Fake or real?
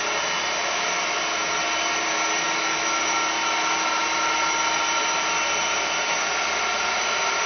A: real